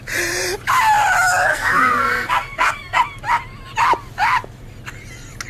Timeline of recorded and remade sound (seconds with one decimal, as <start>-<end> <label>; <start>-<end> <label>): 0.0-1.5 recorded; 1.5-3.0 remade; 3.0-5.5 recorded